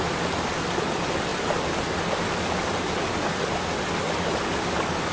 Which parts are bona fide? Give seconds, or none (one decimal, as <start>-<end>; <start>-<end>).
0.0-5.1